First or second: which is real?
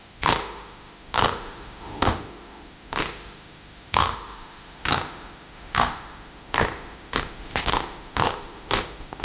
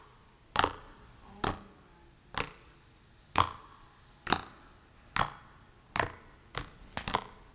second